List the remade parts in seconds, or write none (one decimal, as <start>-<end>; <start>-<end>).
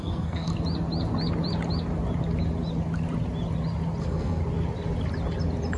0.0-0.5; 4.0-4.4